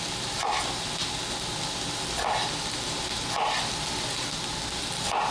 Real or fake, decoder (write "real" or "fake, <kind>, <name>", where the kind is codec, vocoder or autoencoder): real